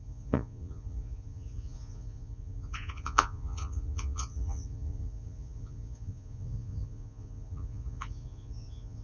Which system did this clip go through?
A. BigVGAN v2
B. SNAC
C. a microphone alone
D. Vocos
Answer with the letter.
D